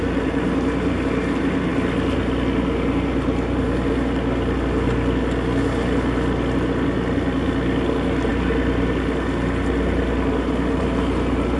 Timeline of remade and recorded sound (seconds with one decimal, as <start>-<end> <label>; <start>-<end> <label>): 0.0-11.6 recorded